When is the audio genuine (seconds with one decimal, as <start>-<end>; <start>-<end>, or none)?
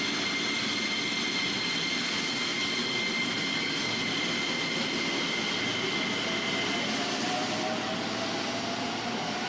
0.0-9.5